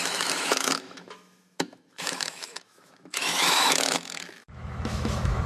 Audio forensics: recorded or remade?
remade